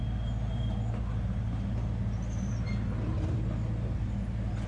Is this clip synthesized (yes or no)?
no